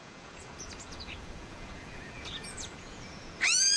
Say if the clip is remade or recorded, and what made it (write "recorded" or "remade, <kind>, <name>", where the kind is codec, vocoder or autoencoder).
remade, vocoder, Vocos